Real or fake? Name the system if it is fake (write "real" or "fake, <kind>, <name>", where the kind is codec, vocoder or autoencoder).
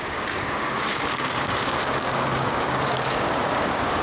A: fake, codec, DAC